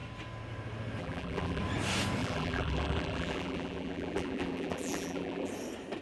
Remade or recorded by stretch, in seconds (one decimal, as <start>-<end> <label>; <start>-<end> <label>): 0.0-1.0 recorded; 1.0-1.6 remade; 1.6-2.2 recorded; 2.2-5.5 remade; 5.5-6.0 recorded